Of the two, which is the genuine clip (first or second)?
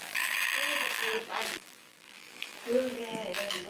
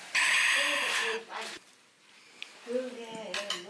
second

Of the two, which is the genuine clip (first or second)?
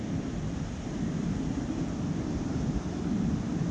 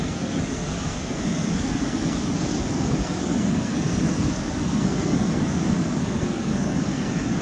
first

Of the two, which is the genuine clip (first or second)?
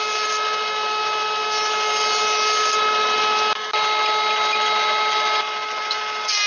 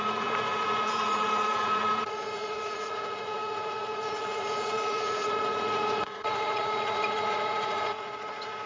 first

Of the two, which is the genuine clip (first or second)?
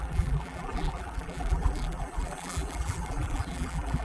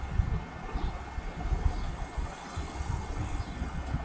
second